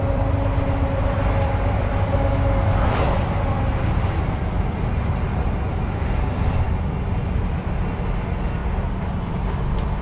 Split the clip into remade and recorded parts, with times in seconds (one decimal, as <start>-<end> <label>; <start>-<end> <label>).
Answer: 0.0-10.0 recorded